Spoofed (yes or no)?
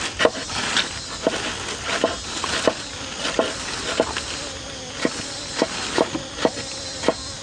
no